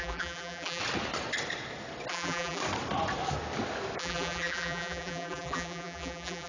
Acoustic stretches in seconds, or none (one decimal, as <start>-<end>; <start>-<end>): 0.8-2.1; 2.6-4.0